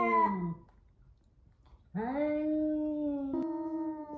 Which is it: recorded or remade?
recorded